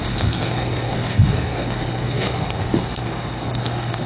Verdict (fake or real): fake